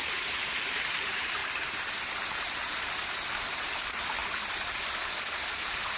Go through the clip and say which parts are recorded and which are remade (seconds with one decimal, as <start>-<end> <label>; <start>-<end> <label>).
0.0-1.4 remade; 1.4-2.0 recorded; 2.0-4.2 remade; 4.2-5.3 recorded; 5.3-6.0 remade